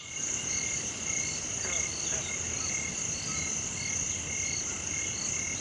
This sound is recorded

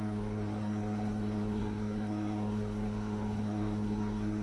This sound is remade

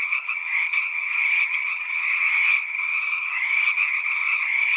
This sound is remade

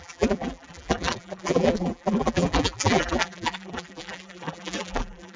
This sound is remade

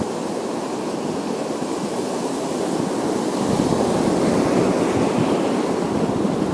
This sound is recorded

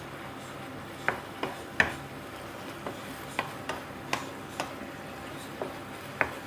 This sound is recorded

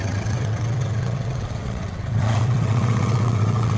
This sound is remade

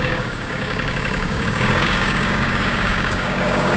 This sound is remade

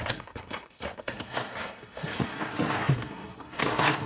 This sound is remade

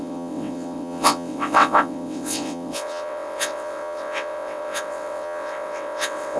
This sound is remade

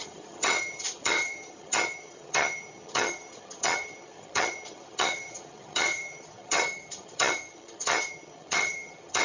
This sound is remade